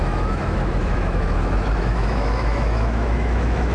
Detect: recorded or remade remade